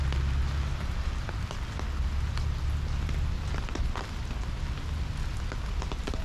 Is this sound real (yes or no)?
yes